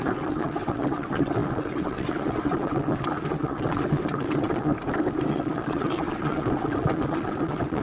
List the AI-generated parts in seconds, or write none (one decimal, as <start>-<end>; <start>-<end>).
0.0-4.7; 5.3-7.8